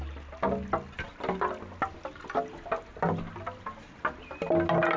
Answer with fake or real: real